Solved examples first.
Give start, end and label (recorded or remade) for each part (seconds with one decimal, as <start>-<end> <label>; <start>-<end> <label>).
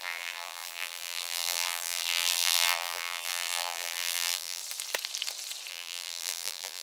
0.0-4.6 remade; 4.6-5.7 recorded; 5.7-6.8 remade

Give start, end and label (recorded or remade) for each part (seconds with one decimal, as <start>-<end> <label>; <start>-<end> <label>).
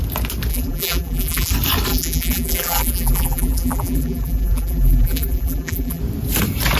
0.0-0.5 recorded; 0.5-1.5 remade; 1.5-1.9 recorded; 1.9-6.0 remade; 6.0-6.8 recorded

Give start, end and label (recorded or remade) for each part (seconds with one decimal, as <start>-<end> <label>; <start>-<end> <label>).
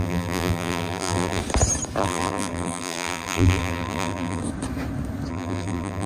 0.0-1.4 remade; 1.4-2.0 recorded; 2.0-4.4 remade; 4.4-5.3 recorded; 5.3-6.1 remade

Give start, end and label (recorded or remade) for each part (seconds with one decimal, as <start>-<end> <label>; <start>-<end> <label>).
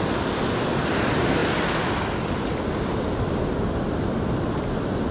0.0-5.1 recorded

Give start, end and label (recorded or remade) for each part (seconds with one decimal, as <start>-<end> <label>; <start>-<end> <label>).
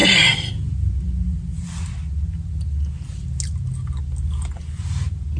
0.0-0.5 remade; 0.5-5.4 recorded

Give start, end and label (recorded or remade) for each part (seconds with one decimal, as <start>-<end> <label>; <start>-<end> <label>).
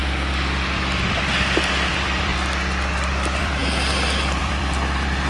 0.0-2.3 remade; 2.3-3.1 recorded; 3.1-3.6 remade; 3.6-4.4 recorded; 4.4-5.3 remade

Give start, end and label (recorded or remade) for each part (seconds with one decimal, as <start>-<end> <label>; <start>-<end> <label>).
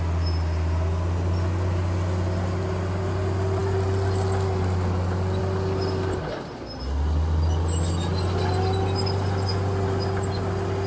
0.0-10.9 recorded